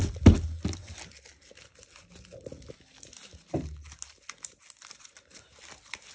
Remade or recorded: recorded